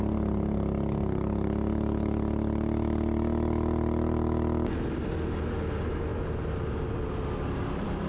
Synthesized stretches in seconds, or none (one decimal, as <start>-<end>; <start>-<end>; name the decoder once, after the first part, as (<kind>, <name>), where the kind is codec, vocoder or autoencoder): none